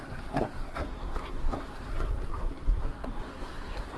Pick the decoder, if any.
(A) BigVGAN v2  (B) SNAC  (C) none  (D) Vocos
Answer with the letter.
B